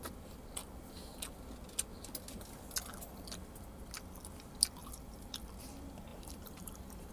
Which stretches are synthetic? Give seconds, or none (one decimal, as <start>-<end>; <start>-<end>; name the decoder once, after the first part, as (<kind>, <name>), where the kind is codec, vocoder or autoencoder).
4.8-5.3 (vocoder, BigVGAN v2); 6.1-7.1